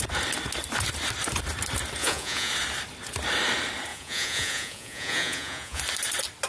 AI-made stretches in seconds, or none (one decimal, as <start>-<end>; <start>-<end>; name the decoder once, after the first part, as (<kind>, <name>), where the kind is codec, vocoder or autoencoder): 2.0-2.5 (vocoder, Vocos); 3.9-5.8